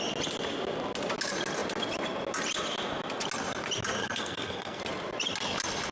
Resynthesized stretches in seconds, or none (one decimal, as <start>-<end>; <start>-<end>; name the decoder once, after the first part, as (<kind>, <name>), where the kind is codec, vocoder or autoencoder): 4.0-4.8 (codec, SNAC)